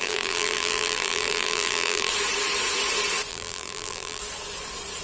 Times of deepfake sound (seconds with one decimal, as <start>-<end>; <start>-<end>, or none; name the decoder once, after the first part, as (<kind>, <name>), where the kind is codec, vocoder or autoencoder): 0.0-2.1 (vocoder, BigVGAN v2); 3.3-4.2